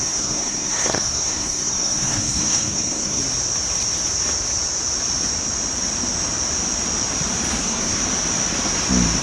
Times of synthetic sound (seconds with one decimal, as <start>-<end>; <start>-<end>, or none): 0.0-3.2; 7.6-8.0